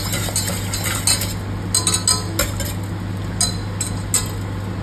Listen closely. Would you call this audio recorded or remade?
recorded